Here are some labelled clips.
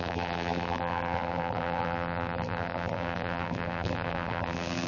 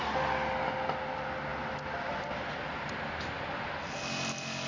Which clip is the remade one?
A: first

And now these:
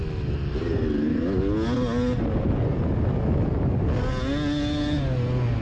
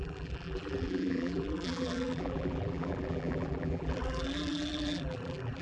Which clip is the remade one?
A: second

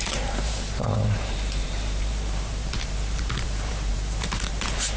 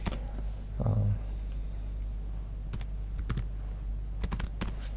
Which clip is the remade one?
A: first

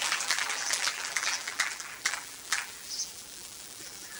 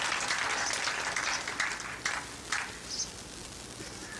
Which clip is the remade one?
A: first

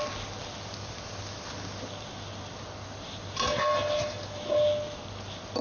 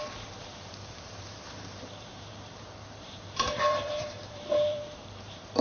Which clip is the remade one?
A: second